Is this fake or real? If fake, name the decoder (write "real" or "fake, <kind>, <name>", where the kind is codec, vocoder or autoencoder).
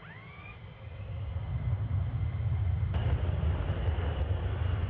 real